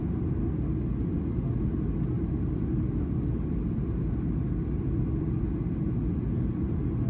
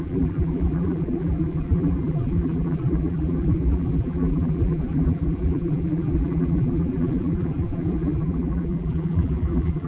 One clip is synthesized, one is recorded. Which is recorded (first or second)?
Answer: first